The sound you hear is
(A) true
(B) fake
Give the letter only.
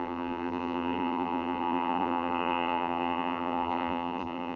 B